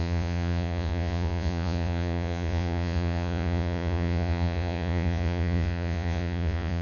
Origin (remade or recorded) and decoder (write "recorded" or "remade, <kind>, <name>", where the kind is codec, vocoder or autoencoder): remade, vocoder, Vocos